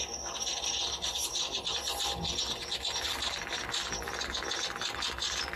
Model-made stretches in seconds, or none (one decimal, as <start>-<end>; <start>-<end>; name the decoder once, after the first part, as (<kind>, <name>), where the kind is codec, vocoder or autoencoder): none